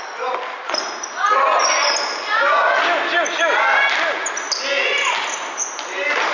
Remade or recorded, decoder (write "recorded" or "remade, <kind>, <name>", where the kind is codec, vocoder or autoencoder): recorded